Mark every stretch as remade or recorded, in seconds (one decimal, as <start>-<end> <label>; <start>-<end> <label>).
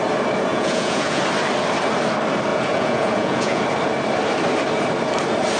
0.0-0.5 recorded; 0.5-1.2 remade; 1.2-2.5 recorded; 2.5-3.6 remade; 3.6-5.6 recorded